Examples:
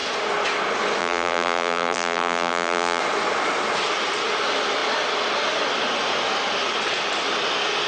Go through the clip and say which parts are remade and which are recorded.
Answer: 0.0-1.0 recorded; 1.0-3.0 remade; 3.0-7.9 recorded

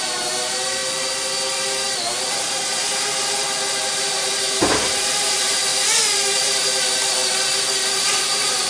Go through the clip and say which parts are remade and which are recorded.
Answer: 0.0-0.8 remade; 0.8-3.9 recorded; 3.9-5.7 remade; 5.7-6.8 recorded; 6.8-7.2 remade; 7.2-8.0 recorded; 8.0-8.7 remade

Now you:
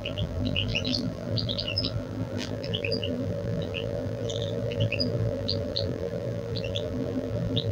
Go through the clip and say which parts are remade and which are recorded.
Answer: 0.0-7.7 remade